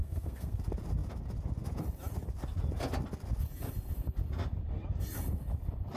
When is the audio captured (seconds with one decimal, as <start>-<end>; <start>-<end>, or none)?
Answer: 0.6-6.0